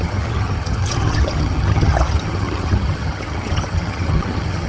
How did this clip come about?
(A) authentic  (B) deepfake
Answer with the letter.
B